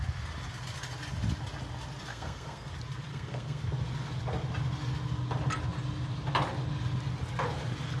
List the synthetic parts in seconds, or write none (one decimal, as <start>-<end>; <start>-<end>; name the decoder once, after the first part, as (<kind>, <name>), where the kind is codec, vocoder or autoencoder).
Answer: 2.1-2.7 (codec, SNAC); 3.1-3.6